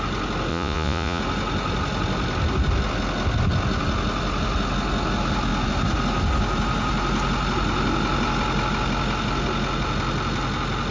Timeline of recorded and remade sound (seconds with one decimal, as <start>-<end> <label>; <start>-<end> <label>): 0.0-0.5 recorded; 0.5-1.2 remade; 1.2-10.9 recorded